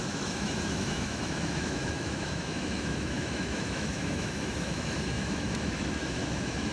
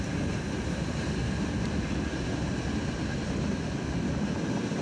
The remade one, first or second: first